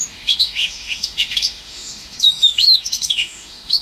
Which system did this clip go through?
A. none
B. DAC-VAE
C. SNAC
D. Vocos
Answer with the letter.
B